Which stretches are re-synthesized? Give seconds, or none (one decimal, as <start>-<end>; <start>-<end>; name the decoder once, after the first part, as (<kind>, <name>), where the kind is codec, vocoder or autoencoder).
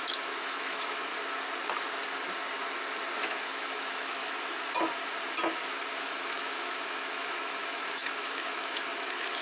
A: 0.0-1.1 (autoencoder, DAC-VAE); 3.2-4.2; 6.0-9.4